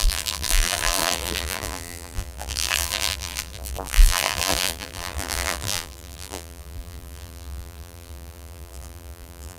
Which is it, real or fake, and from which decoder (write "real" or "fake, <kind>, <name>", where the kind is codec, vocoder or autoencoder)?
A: fake, vocoder, BigVGAN v2